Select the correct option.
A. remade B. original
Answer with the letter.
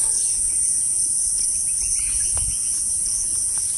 A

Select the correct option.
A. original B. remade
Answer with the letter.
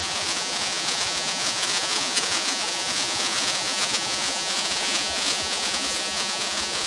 B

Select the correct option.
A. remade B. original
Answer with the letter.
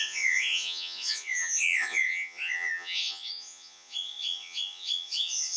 A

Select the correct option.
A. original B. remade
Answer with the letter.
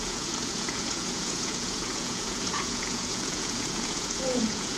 B